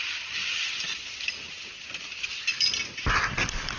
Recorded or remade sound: recorded